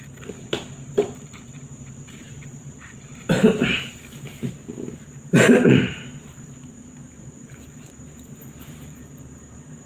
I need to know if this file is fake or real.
fake